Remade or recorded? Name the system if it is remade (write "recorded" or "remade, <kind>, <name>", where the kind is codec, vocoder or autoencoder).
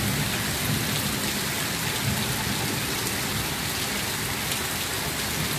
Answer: recorded